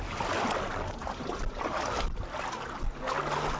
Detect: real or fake real